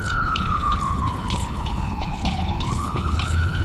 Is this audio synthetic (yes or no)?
yes